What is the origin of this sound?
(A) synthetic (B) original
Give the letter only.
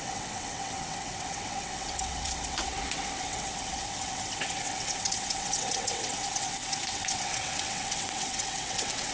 A